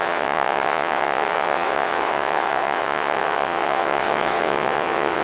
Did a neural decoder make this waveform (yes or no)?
yes